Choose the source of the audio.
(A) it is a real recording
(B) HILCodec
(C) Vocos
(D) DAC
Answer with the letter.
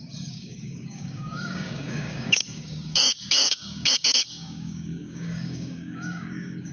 D